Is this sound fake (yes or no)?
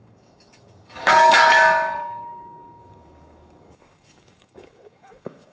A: yes